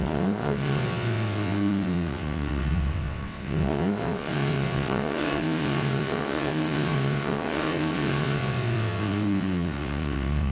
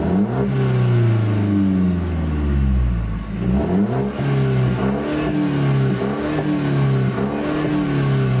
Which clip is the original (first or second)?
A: second